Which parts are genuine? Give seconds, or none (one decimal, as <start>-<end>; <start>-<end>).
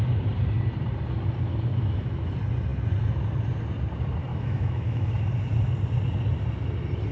0.0-1.7; 2.3-4.3; 5.1-7.1